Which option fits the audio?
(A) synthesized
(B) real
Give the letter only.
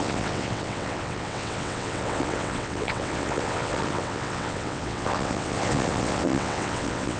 A